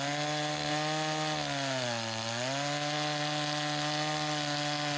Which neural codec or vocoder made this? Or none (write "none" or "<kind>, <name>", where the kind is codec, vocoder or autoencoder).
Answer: none